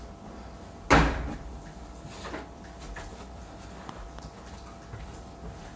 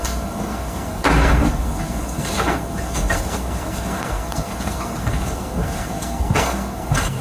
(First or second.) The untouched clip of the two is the first